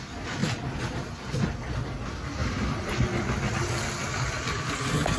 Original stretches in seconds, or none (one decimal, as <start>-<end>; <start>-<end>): 0.0-5.2